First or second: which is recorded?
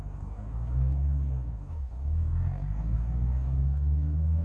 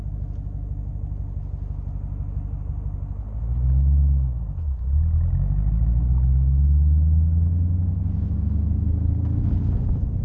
second